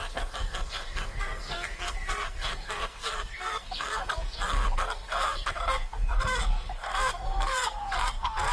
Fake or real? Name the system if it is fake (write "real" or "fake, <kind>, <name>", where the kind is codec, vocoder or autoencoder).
fake, codec, SNAC